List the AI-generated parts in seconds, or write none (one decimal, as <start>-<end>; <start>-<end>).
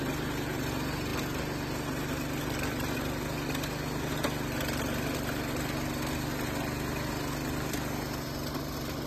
none